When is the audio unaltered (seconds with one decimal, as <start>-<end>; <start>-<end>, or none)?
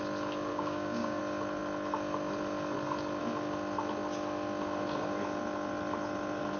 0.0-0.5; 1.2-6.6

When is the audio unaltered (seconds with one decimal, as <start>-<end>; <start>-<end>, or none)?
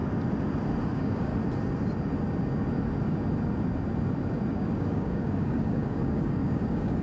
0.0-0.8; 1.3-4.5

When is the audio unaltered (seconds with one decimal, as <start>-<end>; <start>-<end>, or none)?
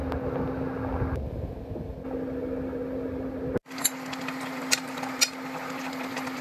0.0-6.4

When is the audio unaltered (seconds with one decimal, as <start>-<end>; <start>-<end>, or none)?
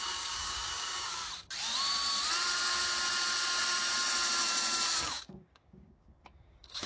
1.2-5.0